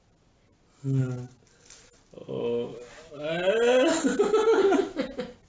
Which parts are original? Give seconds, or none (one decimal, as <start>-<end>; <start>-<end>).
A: 0.0-5.5